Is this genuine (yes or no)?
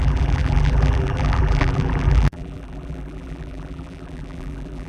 no